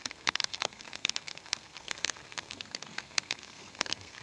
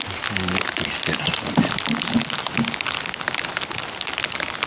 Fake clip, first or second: first